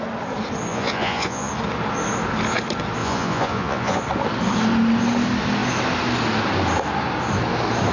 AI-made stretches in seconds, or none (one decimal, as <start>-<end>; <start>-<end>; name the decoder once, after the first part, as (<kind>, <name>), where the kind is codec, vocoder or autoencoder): 0.7-1.5 (vocoder, Vocos); 3.0-4.0